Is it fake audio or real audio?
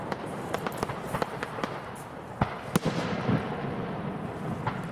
real